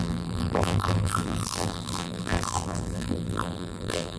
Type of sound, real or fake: fake